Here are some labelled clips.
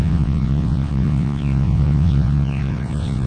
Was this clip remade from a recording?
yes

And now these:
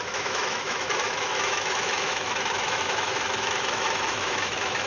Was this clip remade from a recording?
yes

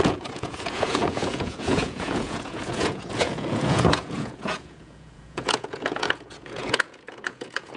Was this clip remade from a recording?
yes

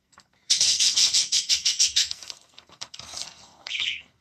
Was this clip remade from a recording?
yes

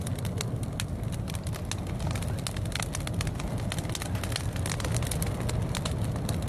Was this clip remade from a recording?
no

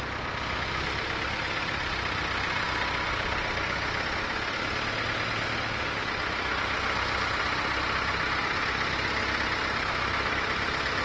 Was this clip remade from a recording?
no